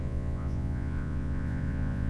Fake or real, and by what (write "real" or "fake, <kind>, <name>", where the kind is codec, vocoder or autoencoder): fake, vocoder, Vocos